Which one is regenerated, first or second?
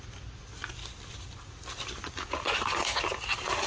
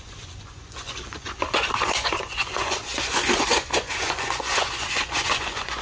second